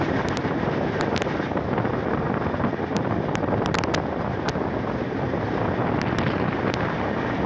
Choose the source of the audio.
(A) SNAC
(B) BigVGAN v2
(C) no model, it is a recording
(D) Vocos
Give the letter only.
C